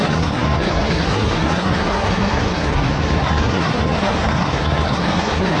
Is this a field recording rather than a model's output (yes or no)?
no